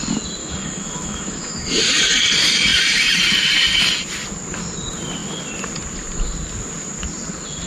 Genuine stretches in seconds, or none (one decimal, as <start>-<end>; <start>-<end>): 0.0-0.4; 1.8-7.7